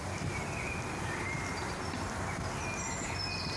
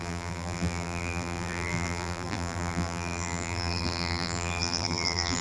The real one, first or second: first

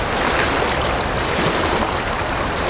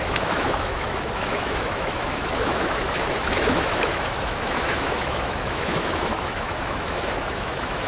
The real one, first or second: first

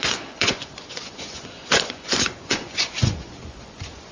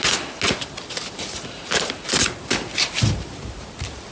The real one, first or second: second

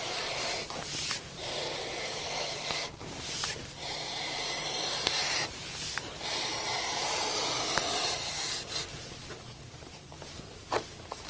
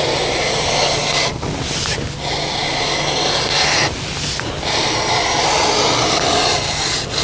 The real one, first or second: second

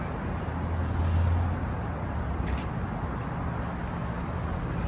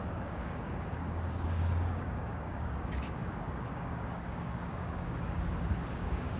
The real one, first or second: first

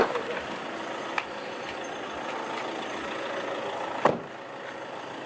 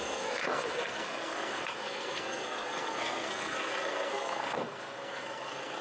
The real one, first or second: first